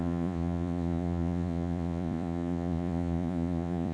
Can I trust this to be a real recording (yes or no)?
no